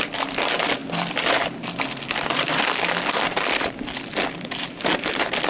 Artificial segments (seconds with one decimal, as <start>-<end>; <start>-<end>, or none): none